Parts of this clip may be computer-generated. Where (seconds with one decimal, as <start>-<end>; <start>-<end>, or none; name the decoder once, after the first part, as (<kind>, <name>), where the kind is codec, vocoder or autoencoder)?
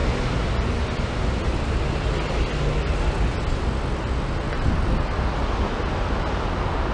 none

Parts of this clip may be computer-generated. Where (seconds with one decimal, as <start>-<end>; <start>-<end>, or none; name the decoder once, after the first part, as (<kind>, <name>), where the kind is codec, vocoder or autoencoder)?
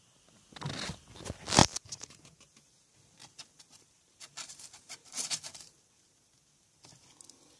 1.6-5.4 (vocoder, BigVGAN v2)